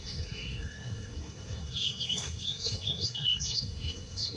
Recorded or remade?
remade